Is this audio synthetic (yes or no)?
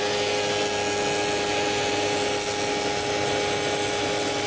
no